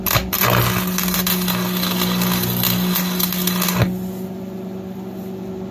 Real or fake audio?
real